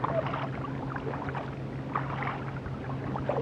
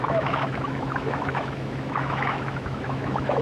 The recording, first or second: first